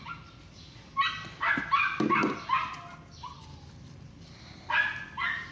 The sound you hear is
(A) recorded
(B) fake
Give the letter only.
A